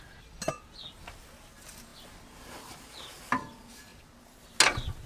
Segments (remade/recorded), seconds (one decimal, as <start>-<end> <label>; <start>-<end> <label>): 0.0-5.1 recorded